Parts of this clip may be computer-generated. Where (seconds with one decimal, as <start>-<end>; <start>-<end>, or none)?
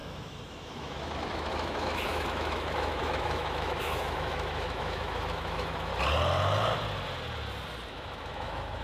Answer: 0.0-5.9; 7.9-8.8